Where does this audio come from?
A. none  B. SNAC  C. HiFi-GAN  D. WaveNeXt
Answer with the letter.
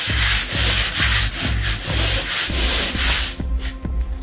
A